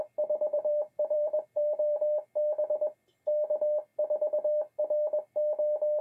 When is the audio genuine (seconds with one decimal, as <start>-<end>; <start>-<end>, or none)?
0.0-0.5; 2.0-6.0